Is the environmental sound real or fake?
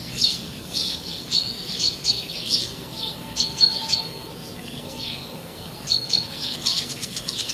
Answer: fake